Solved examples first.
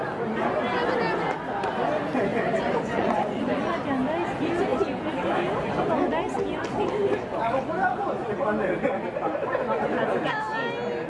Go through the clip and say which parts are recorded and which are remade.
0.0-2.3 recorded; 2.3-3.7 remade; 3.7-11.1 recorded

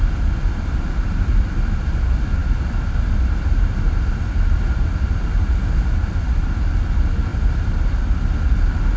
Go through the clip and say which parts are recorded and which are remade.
0.0-9.0 recorded

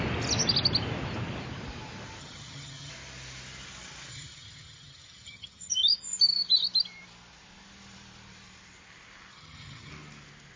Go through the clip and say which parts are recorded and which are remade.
0.0-2.2 recorded; 2.2-2.9 remade; 2.9-4.1 recorded; 4.1-5.7 remade; 5.7-9.3 recorded; 9.3-9.9 remade; 9.9-10.6 recorded

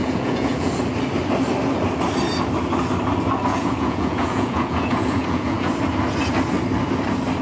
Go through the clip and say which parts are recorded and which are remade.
0.0-0.7 remade; 0.7-3.5 recorded; 3.5-5.7 remade; 5.7-7.4 recorded

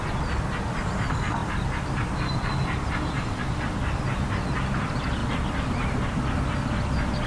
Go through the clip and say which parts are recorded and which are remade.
0.0-7.3 recorded

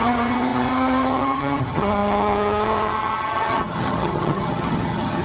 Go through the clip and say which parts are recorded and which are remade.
0.0-5.2 remade